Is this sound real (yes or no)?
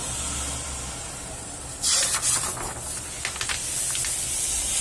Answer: yes